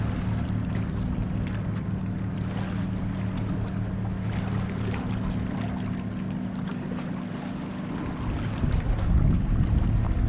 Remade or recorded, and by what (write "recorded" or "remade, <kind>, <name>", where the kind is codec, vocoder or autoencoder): recorded